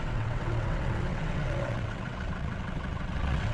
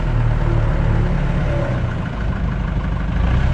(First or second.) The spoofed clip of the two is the first